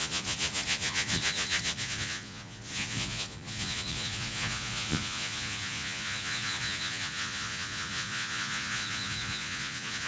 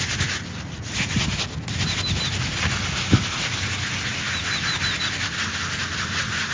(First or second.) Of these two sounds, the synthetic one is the first